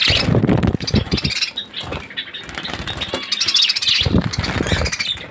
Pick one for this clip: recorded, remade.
recorded